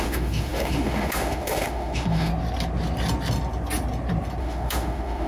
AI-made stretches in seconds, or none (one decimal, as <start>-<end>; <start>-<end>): 0.0-2.3; 4.4-5.3